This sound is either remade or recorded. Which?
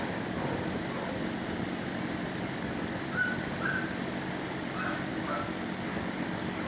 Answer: recorded